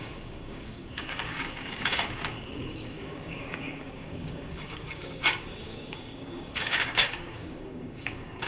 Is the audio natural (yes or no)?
no